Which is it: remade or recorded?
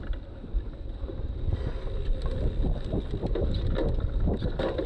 recorded